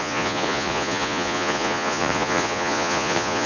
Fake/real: fake